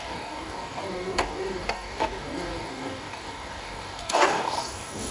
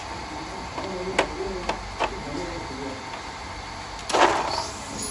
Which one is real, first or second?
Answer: second